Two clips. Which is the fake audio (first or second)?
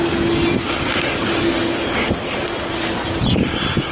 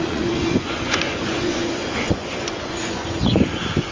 second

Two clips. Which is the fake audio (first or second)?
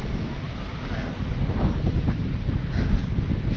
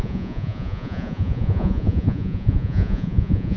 second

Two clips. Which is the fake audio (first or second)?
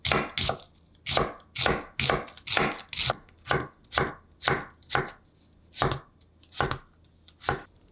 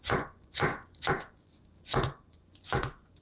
second